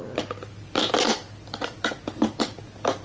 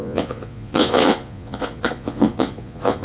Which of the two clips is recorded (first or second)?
first